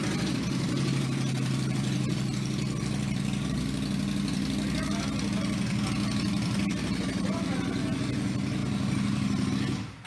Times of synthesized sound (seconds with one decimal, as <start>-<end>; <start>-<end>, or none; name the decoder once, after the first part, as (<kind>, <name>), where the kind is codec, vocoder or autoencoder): none